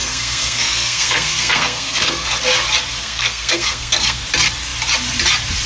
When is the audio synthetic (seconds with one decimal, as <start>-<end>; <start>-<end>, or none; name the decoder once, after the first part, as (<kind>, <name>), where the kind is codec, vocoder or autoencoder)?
0.0-2.4 (codec, SNAC); 3.0-4.2